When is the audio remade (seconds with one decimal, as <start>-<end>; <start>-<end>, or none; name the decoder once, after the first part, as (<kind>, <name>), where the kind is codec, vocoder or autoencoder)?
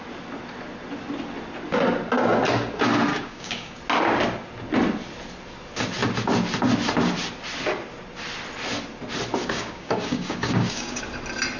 3.1-3.8 (codec, DAC); 9.4-11.0